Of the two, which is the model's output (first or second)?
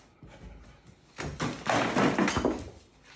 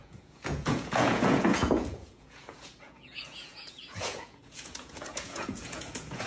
second